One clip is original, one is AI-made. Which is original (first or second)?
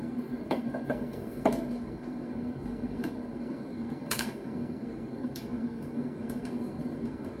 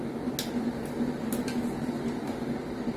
second